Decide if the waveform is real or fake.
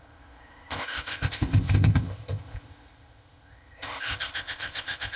fake